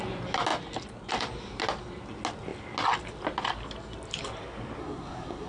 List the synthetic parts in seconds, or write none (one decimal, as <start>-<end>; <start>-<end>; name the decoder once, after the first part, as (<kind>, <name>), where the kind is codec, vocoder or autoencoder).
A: 4.8-5.5 (codec, SNAC)

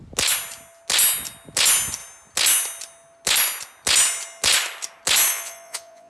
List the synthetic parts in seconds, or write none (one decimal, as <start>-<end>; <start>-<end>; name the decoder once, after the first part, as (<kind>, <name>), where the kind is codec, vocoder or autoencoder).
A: 5.3-6.1 (vocoder, Vocos)

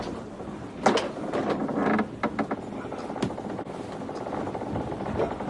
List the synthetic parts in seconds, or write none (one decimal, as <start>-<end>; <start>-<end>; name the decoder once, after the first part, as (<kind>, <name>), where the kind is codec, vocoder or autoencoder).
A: none

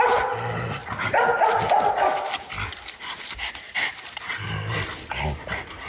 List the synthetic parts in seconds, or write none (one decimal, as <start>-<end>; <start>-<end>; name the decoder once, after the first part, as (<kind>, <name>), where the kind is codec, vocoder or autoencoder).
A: none

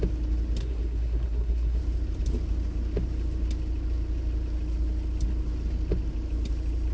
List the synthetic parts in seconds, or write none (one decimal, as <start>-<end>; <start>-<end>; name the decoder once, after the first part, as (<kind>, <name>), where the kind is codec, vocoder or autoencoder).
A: 0.6-1.8 (codec, SNAC)

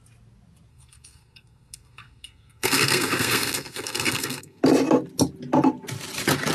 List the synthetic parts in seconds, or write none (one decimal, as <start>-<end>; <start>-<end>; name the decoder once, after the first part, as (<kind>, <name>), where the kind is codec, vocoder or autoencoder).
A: 0.7-4.6 (codec, SNAC)

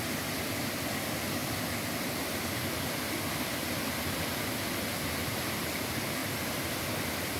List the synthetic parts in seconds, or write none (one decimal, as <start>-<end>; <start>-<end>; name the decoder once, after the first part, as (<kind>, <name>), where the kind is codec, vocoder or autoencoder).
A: none

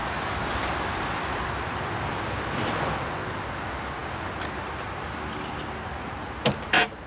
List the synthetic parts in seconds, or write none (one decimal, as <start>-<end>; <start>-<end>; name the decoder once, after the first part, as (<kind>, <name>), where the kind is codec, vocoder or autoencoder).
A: none